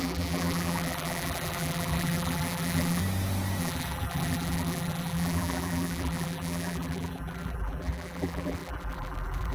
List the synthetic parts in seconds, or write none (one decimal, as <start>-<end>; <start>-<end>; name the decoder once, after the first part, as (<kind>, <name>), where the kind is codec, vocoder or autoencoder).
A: 0.0-3.0 (vocoder, BigVGAN v2); 3.6-9.5